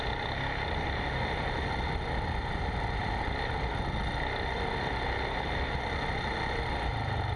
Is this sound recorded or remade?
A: recorded